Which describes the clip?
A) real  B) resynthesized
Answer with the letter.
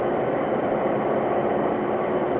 A